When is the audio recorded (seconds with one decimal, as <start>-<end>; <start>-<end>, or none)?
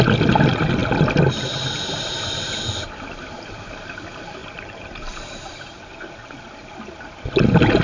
0.0-4.4; 5.6-7.8